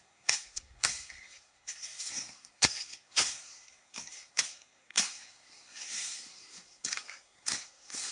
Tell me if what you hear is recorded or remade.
remade